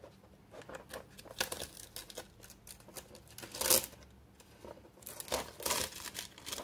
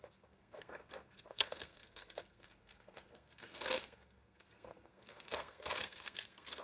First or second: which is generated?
second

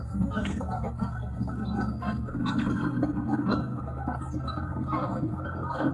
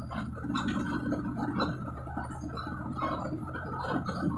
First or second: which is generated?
first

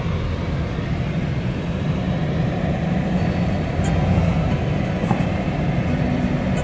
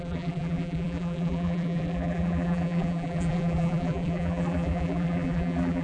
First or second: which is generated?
second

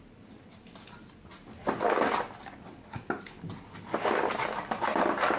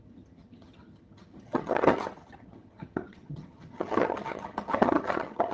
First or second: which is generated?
second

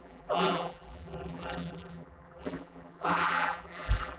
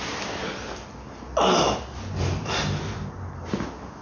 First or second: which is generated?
first